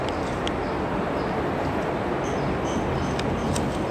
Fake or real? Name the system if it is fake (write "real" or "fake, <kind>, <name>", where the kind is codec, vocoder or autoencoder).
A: real